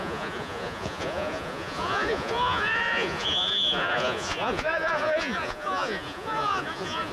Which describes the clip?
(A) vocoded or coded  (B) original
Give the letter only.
A